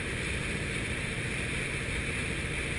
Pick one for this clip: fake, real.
fake